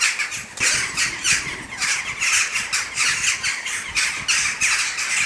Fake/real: real